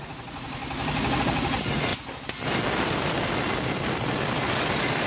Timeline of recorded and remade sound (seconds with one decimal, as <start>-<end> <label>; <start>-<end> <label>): 0.0-0.6 remade; 0.6-1.2 recorded; 1.2-1.9 remade; 1.9-5.1 recorded

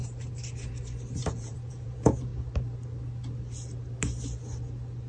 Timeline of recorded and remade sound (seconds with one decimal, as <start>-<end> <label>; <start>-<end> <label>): 0.0-1.3 recorded; 1.3-2.3 remade; 2.3-5.1 recorded

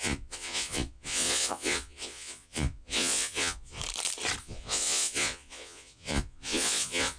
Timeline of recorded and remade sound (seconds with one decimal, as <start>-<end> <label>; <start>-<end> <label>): 0.0-3.8 remade; 3.8-4.4 recorded; 4.4-7.2 remade

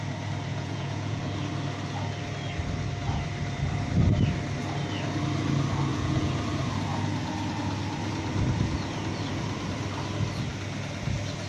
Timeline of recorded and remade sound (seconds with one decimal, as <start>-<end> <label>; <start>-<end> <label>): 0.0-0.5 recorded; 0.5-1.2 remade; 1.2-5.9 recorded; 5.9-6.4 remade; 6.4-11.5 recorded

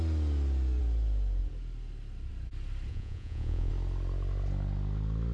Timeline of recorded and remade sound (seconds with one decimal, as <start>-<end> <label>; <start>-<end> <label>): 0.0-2.9 recorded; 2.9-3.7 remade; 3.7-5.3 recorded

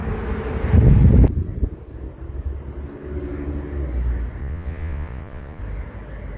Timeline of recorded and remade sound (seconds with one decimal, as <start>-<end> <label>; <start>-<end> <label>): 0.0-4.4 recorded; 4.4-5.6 remade; 5.6-6.4 recorded

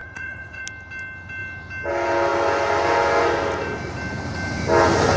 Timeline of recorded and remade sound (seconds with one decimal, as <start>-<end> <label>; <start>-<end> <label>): 0.0-0.6 remade; 0.6-5.2 recorded

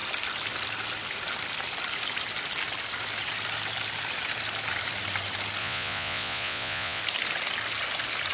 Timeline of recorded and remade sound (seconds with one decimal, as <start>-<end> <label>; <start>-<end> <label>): 0.0-5.6 recorded; 5.6-7.0 remade; 7.0-8.3 recorded